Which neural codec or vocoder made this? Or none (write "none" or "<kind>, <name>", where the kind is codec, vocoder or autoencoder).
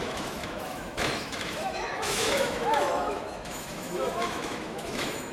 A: autoencoder, DAC-VAE